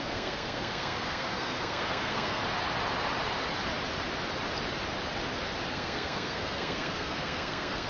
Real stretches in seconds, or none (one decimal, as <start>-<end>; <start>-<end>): 2.4-5.7